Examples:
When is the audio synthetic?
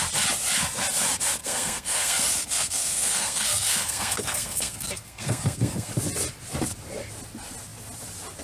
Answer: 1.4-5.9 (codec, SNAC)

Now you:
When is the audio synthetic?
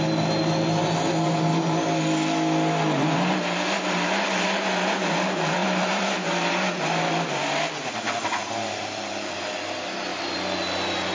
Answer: 5.6-9.5 (vocoder, BigVGAN v2)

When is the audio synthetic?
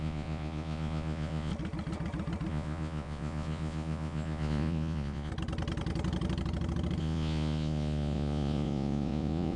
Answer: 0.0-1.5 (vocoder, Vocos); 2.5-5.3; 7.0-9.6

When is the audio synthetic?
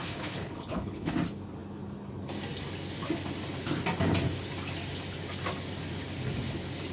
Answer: 0.0-1.1 (codec, HILCodec)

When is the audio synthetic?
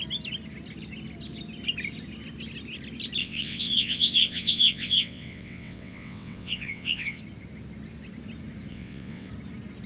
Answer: 3.2-7.2 (vocoder, WaveNeXt); 8.7-9.3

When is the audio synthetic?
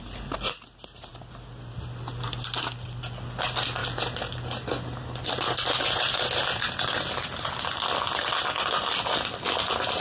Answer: none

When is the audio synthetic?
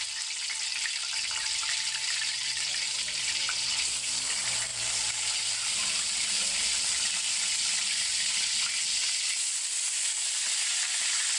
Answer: 0.7-3.7 (vocoder, BigVGAN v2); 4.7-7.2